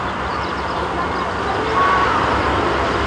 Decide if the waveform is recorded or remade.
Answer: recorded